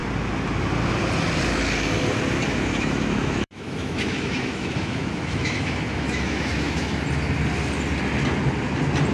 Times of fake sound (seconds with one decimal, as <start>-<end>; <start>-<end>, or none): 2.5-7.0